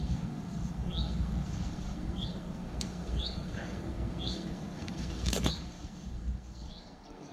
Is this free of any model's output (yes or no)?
no